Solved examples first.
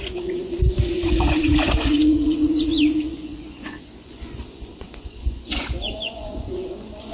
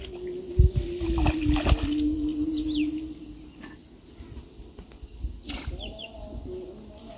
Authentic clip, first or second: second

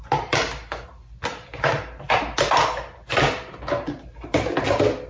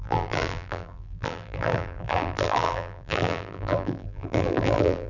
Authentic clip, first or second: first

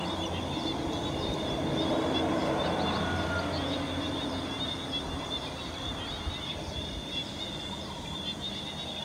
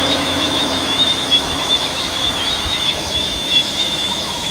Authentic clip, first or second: first